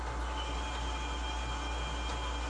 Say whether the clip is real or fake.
real